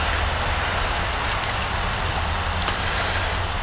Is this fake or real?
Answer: real